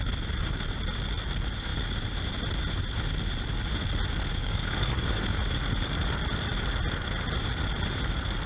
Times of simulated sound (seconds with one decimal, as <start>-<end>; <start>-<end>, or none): 4.3-5.2